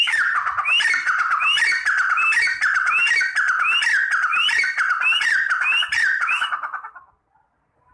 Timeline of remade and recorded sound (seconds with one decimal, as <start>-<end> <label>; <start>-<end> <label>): 0.0-4.3 recorded; 4.3-6.3 remade; 6.3-7.9 recorded